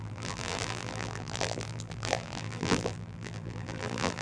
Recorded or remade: remade